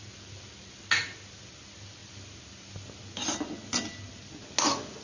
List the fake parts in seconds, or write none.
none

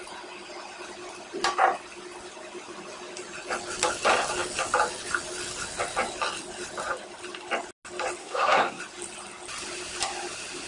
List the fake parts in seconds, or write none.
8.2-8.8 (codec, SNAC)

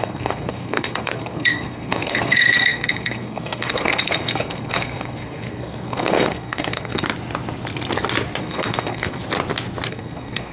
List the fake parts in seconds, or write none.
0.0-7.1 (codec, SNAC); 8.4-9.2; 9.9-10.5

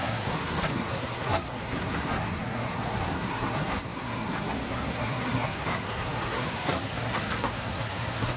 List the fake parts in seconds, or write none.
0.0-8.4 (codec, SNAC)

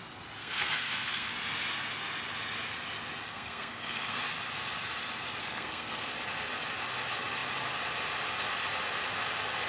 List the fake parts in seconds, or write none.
0.4-1.3 (codec, SNAC); 3.3-4.2; 5.4-6.1